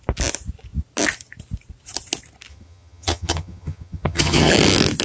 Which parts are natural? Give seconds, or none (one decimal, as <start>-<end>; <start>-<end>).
0.0-2.5; 4.5-5.0